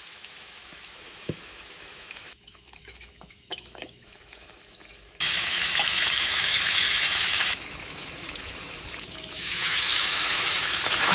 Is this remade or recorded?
remade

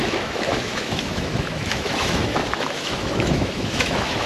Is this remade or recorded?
remade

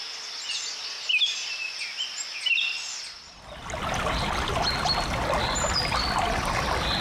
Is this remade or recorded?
recorded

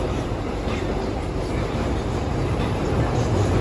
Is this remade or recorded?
remade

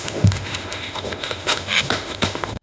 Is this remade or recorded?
remade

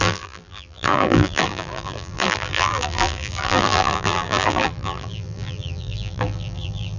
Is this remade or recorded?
remade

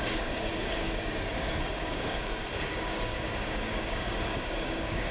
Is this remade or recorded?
remade